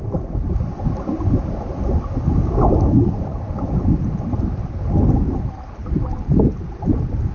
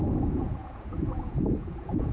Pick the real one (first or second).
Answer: first